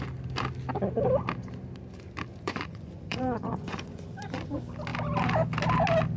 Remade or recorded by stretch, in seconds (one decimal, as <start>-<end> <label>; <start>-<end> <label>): 0.0-2.3 recorded; 2.3-4.5 remade; 4.5-6.2 recorded